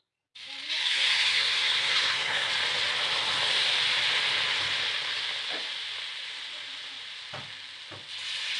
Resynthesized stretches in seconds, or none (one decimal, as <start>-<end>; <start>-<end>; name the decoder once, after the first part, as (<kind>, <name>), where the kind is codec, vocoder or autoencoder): 0.8-2.5 (codec, SNAC)